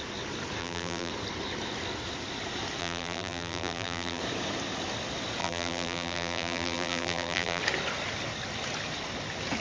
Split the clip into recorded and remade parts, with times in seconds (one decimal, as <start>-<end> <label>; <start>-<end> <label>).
0.0-0.6 recorded; 0.6-1.1 remade; 1.1-2.8 recorded; 2.8-4.2 remade; 4.2-5.4 recorded; 5.4-7.6 remade; 7.6-9.6 recorded